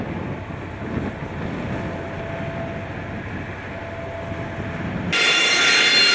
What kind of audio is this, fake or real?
real